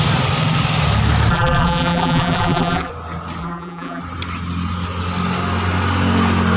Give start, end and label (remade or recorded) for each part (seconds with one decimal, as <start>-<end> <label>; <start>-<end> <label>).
0.0-1.3 recorded; 1.3-2.9 remade; 2.9-3.4 recorded; 3.4-4.0 remade; 4.0-6.6 recorded